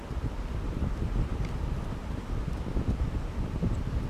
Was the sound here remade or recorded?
recorded